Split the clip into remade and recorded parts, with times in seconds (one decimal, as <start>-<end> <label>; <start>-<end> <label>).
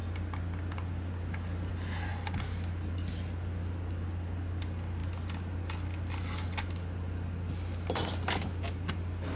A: 0.0-9.4 recorded